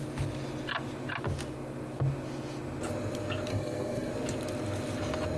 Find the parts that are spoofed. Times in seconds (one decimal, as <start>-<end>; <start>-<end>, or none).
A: 3.5-4.1